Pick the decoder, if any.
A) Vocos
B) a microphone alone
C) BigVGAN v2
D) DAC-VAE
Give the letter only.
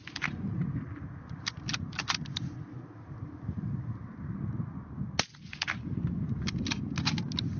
B